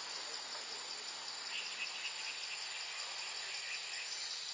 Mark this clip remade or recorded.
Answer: recorded